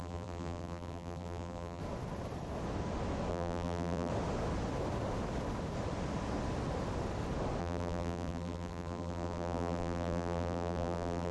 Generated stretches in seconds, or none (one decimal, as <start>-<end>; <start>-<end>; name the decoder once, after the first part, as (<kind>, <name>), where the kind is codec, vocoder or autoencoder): 0.0-1.8 (vocoder, BigVGAN v2); 3.3-4.1; 7.6-11.3